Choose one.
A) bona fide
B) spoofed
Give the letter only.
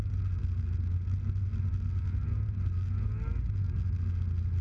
A